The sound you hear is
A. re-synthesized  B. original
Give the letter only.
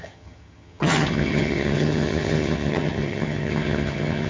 A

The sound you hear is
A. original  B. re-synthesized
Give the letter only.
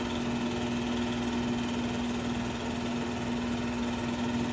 A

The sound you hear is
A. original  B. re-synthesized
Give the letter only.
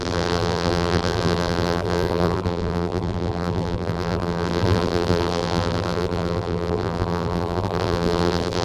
B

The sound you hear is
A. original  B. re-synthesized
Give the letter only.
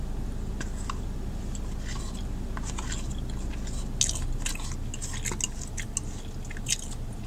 A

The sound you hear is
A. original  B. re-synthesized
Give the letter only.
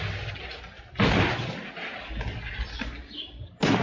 A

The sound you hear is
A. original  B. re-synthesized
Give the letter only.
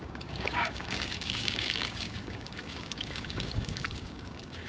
B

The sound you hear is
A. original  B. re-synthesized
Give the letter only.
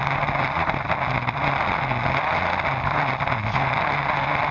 A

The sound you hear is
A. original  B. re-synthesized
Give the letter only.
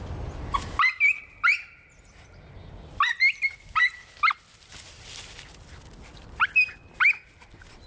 A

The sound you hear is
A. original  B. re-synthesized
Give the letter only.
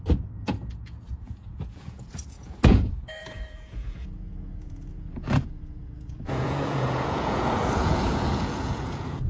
B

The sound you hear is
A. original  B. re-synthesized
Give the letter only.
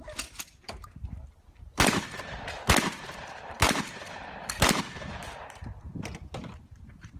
B